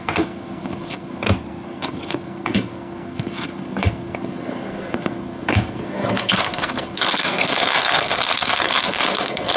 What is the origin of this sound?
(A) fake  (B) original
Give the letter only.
A